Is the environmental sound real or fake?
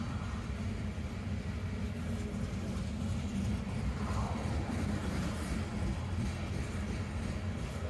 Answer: real